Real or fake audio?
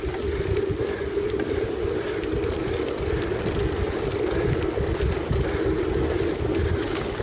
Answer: real